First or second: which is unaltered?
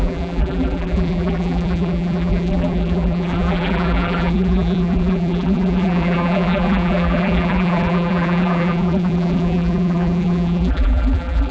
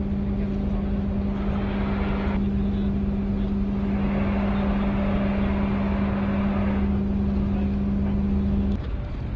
second